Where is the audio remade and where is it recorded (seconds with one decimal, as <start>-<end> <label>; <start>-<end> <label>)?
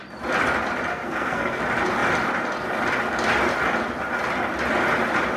0.0-0.9 recorded; 0.9-1.6 remade; 1.6-5.4 recorded